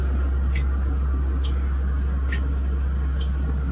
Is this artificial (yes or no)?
no